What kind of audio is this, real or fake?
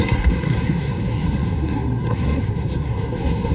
fake